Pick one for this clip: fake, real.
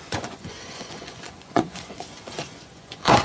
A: fake